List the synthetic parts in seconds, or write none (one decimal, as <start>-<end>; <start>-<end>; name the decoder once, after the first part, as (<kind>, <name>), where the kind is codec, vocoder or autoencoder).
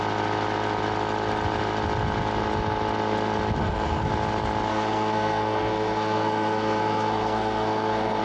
3.6-4.1 (codec, SNAC); 4.7-8.2